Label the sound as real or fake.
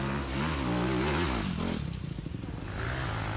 real